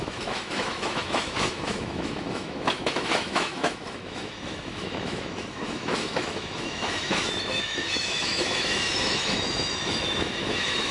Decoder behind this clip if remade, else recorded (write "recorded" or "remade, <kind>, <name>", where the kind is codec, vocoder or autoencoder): remade, autoencoder, DAC-VAE